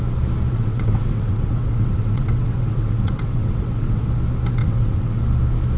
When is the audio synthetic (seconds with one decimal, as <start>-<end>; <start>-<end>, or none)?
0.5-4.0; 4.6-5.2